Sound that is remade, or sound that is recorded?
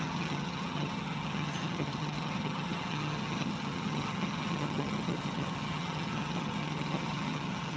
remade